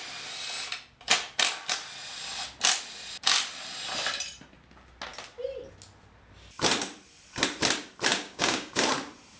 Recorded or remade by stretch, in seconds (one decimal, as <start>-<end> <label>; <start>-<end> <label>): 0.0-8.1 recorded; 8.1-8.8 remade; 8.8-9.4 recorded